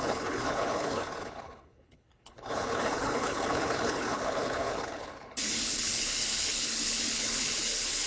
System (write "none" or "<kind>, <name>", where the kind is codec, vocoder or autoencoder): codec, HILCodec